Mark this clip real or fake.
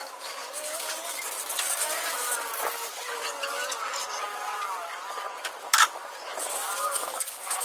fake